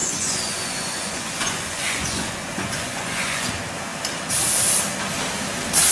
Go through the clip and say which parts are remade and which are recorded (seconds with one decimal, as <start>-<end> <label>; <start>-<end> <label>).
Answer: 0.0-3.5 remade; 3.5-5.9 recorded